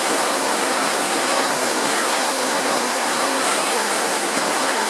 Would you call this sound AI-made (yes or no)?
yes